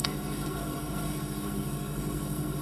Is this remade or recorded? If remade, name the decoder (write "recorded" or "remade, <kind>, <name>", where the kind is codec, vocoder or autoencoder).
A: remade, codec, SNAC